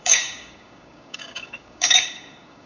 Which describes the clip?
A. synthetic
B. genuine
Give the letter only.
A